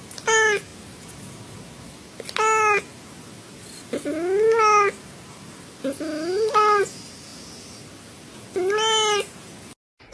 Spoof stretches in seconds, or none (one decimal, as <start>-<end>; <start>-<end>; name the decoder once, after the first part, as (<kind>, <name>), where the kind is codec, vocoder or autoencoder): none